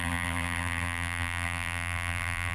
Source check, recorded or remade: remade